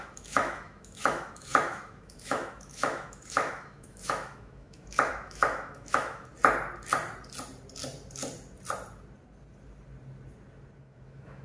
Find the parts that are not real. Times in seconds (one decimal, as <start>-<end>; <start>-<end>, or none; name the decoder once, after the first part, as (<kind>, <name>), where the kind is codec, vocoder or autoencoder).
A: 0.0-6.3 (autoencoder, DAC-VAE); 10.8-11.4